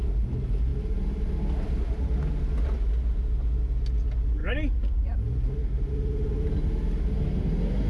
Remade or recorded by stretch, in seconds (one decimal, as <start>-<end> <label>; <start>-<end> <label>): 0.0-7.9 recorded